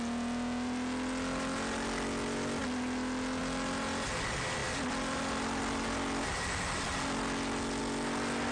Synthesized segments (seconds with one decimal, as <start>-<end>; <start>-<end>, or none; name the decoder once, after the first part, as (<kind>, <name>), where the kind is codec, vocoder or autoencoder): none

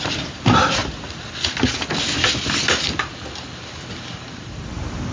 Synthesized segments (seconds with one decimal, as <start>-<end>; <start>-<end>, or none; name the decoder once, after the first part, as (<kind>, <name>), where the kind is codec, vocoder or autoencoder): 0.0-0.8 (vocoder, BigVGAN v2); 2.6-5.1